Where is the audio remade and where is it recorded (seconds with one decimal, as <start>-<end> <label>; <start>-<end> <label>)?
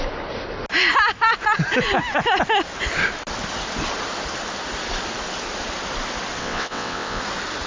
0.0-6.4 recorded; 6.4-7.2 remade; 7.2-7.7 recorded